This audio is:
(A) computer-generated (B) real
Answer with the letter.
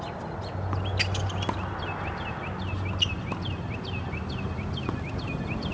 B